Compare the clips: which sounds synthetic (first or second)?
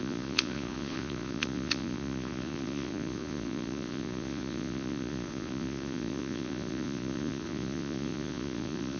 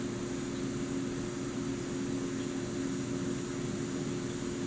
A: first